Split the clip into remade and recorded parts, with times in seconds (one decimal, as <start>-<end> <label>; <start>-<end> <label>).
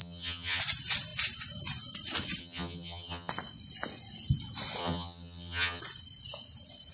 0.0-0.6 remade; 0.6-2.4 recorded; 2.4-3.3 remade; 3.3-4.8 recorded; 4.8-5.8 remade; 5.8-6.9 recorded